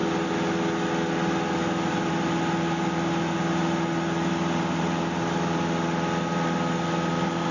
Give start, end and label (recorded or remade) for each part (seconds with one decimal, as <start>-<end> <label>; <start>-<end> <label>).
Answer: 0.0-7.5 recorded